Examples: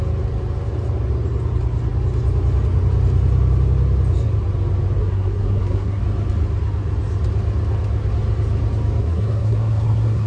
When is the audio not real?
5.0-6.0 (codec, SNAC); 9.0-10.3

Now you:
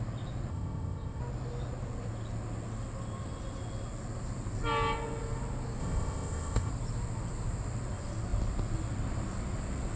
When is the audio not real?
0.5-1.2 (codec, ZipCodec); 5.8-6.7

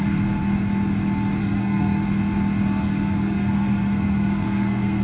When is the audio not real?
0.0-0.4 (codec, SNAC); 1.4-2.0; 2.8-5.0